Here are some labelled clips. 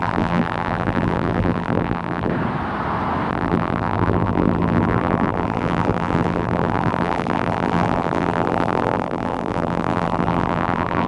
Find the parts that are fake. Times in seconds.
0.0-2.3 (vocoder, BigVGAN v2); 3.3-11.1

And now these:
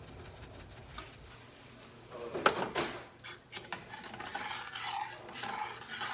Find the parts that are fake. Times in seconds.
none

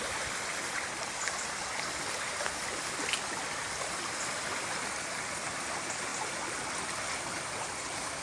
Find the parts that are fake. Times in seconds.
none

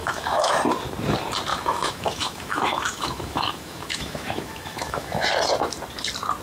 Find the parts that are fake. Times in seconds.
0.0-0.5 (autoencoder, DAC-VAE); 1.5-5.3

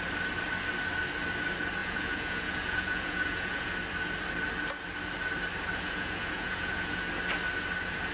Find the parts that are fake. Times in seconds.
1.8-3.7 (vocoder, Vocos); 5.7-7.0